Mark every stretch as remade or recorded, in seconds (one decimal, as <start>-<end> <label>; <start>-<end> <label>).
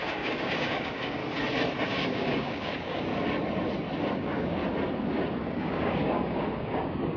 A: 0.0-1.2 remade; 1.2-1.8 recorded; 1.8-3.1 remade; 3.1-4.1 recorded; 4.1-4.6 remade; 4.6-5.4 recorded; 5.4-7.2 remade